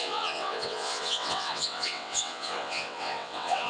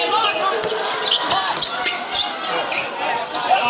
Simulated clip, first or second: first